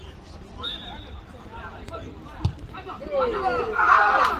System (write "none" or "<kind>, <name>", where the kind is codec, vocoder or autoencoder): none